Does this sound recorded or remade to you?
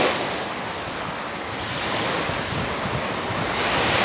recorded